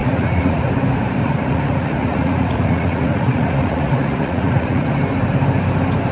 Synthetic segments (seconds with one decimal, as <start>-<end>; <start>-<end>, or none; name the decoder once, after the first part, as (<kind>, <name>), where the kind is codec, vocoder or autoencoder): 0.0-0.6 (vocoder, Vocos); 1.2-4.9